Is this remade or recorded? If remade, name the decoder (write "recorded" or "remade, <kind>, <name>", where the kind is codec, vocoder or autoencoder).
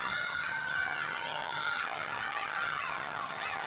remade, vocoder, HiFi-GAN